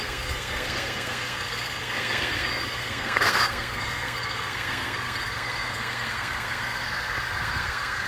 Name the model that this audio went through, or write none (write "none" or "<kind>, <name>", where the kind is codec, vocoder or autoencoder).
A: codec, SNAC